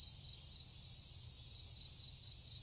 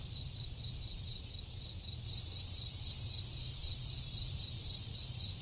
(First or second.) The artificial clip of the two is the second